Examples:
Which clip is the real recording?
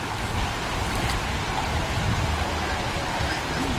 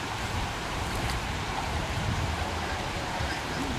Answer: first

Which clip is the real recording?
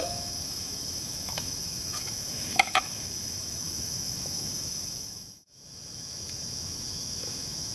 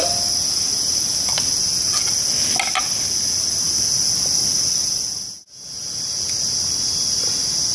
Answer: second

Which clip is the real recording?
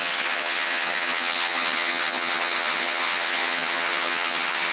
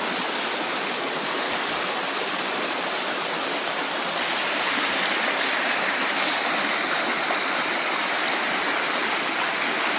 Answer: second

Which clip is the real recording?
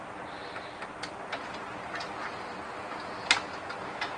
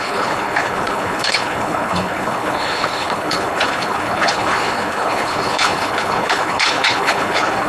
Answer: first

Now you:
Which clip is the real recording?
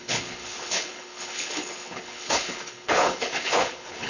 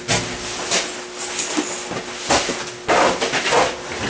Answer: second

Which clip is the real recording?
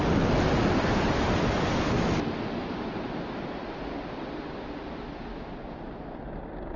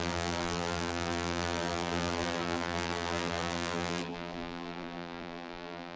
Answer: first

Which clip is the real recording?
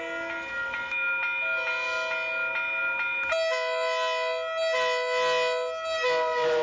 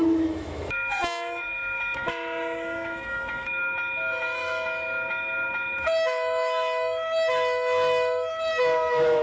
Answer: first